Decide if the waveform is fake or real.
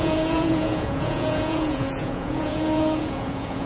fake